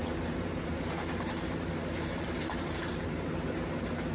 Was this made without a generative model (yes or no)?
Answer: no